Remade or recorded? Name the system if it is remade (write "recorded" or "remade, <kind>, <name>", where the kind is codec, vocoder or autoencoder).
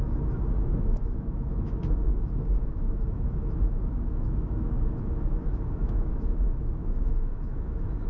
remade, autoencoder, DAC-VAE